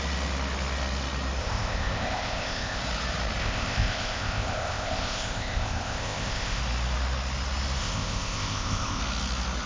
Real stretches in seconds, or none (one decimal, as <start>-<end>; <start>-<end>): 0.0-1.4; 2.8-3.4; 6.6-7.8; 9.0-9.7